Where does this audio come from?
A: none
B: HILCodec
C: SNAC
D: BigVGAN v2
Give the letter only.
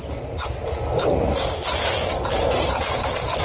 A